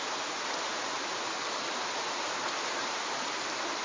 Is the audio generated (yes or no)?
no